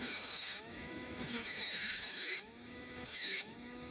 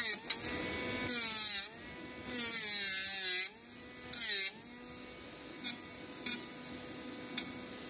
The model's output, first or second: first